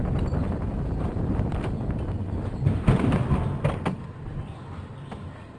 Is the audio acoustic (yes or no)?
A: yes